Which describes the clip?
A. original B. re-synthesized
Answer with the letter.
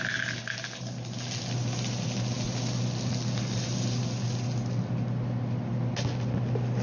A